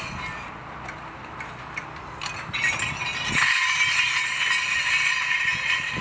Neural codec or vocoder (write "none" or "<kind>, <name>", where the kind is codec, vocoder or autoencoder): none